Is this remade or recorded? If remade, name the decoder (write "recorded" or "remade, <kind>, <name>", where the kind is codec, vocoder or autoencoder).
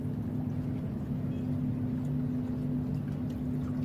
recorded